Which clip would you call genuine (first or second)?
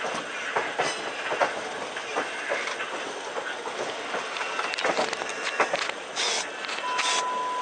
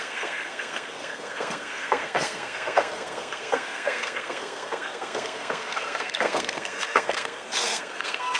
first